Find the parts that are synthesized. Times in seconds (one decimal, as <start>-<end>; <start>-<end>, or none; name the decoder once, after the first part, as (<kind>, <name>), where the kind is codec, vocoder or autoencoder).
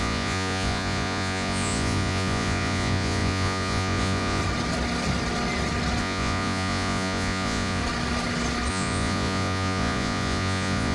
0.0-4.4 (vocoder, Vocos); 6.0-7.8; 8.7-10.9